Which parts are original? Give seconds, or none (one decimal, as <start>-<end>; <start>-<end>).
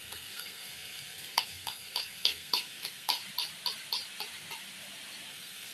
3.2-5.3